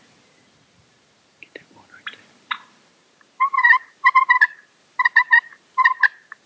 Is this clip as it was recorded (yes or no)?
no